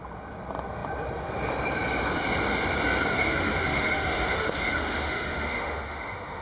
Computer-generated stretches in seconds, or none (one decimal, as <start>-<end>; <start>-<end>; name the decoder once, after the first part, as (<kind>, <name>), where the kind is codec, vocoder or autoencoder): 3.1-6.4 (autoencoder, DAC-VAE)